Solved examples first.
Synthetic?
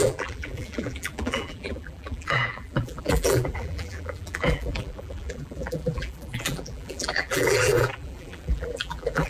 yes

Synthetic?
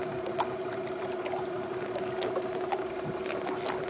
no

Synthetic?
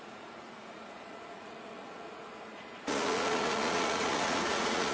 yes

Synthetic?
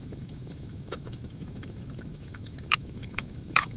yes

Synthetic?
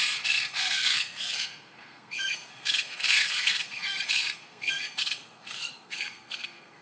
yes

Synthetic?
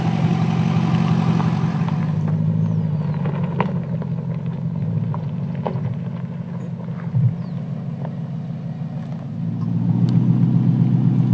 no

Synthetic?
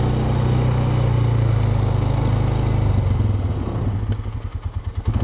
no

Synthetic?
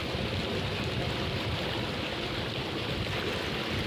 no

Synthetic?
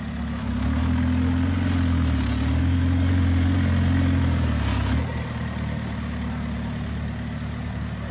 no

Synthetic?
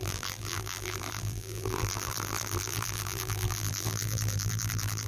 yes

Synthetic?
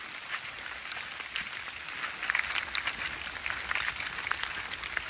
no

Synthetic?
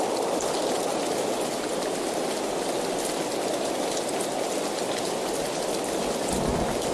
no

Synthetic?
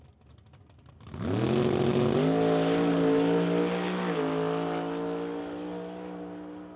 no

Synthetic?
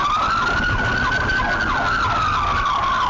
no